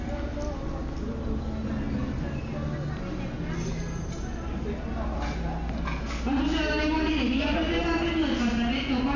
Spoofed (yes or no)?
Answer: no